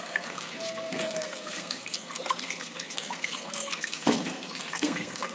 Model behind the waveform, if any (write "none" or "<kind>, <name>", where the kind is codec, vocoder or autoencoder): codec, SNAC